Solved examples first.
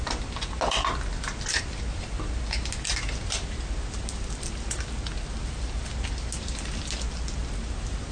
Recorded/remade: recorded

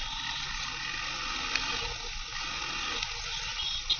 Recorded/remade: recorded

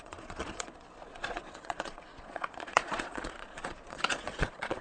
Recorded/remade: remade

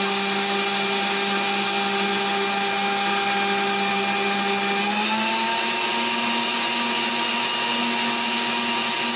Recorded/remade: recorded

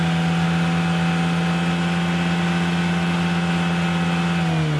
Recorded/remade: recorded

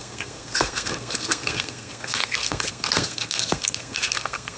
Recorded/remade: remade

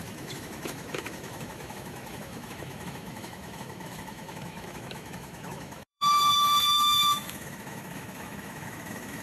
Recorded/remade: remade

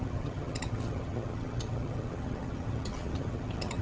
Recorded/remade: remade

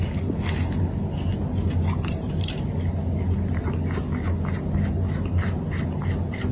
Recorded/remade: recorded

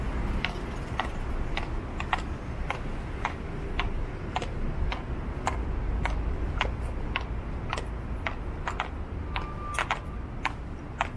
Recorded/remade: recorded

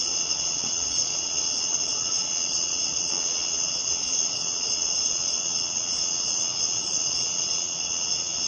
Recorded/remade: remade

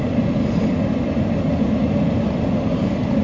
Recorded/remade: recorded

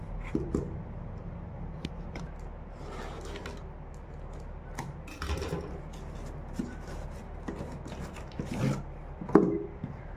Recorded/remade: recorded